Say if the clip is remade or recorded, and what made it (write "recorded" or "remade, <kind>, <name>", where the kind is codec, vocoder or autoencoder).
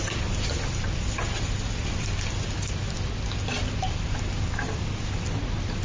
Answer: recorded